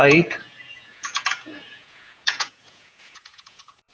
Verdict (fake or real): fake